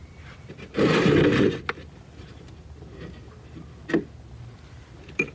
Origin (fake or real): real